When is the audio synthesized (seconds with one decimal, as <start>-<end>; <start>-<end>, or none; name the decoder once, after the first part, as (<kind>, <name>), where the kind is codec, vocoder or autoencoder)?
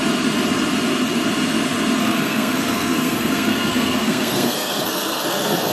2.0-5.7 (codec, SNAC)